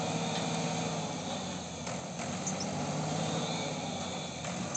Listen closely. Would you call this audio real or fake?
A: real